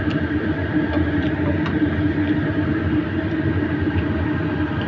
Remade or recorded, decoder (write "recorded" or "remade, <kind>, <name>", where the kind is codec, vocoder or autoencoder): recorded